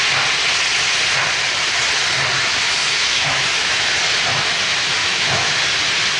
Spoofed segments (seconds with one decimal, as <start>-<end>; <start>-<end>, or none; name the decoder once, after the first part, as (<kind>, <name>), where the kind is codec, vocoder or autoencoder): 2.8-3.8 (autoencoder, DAC-VAE); 5.0-5.6